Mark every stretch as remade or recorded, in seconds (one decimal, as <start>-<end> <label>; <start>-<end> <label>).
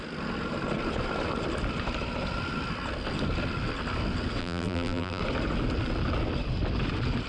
0.0-4.4 recorded; 4.4-5.2 remade; 5.2-7.3 recorded